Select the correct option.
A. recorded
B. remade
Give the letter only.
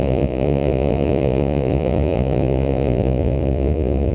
B